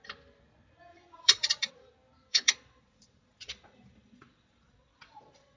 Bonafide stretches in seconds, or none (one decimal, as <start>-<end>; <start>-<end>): 0.0-0.9; 1.7-2.3